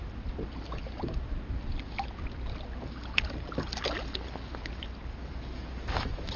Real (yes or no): yes